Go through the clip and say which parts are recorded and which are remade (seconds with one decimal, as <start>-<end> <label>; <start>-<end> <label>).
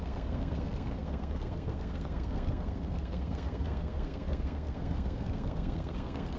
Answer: 0.0-6.4 remade